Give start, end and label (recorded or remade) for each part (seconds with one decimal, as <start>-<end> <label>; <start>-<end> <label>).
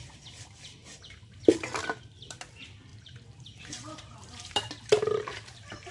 0.0-0.8 recorded; 0.8-1.4 remade; 1.4-2.9 recorded; 2.9-4.7 remade; 4.7-5.9 recorded